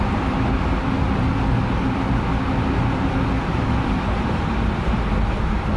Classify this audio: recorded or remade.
recorded